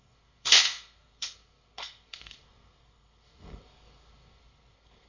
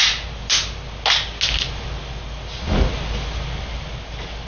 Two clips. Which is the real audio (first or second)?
second